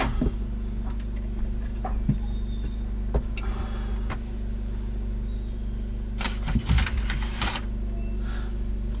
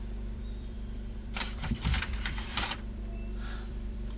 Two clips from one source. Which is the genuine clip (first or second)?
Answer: first